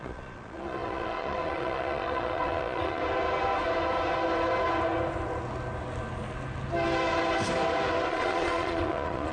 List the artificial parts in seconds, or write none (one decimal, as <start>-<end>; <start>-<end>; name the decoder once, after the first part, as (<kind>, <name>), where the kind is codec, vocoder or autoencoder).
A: 0.0-3.0 (vocoder, Vocos); 8.1-9.3